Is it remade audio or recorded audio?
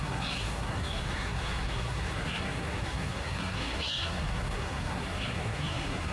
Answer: remade